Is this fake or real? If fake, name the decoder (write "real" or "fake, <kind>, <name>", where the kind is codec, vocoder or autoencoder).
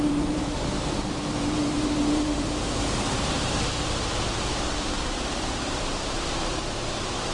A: fake, vocoder, BigVGAN v2